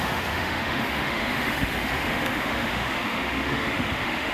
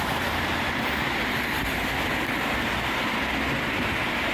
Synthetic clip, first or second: first